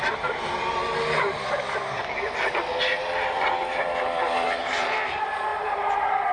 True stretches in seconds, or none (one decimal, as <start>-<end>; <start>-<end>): 0.8-4.6